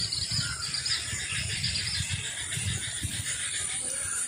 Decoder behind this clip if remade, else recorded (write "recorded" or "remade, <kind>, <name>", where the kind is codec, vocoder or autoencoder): remade, vocoder, BigVGAN v2